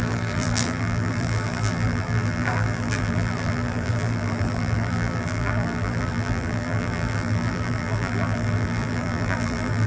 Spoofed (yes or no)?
yes